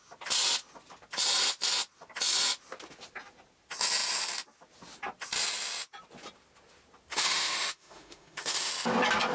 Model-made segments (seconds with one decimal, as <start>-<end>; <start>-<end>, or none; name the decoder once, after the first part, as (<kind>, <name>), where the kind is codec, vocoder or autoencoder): 7.1-8.7 (autoencoder, DAC-VAE)